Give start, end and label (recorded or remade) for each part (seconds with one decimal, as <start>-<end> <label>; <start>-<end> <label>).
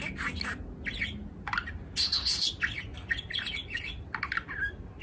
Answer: 0.0-2.9 recorded; 2.9-4.2 remade; 4.2-5.0 recorded